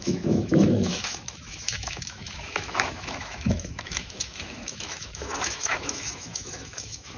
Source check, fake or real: fake